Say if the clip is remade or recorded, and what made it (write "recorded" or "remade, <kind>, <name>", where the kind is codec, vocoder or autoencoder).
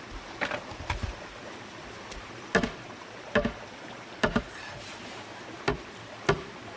recorded